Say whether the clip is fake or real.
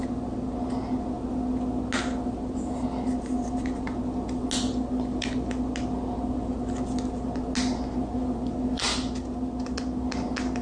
real